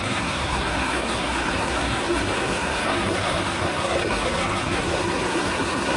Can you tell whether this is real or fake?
fake